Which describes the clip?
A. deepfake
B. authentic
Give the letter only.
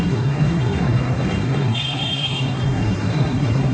A